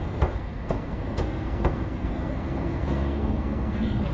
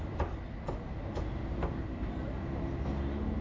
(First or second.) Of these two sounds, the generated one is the first